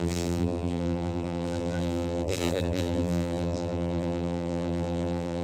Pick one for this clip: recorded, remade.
remade